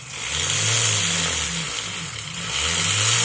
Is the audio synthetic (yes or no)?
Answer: no